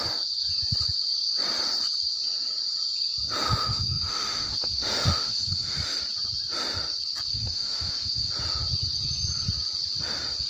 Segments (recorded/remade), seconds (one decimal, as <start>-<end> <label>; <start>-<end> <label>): 0.0-3.6 recorded; 3.6-6.0 remade; 6.0-7.3 recorded; 7.3-8.3 remade; 8.3-10.5 recorded